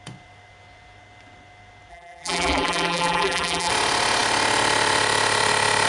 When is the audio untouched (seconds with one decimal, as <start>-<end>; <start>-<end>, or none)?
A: 0.0-1.9; 3.7-5.9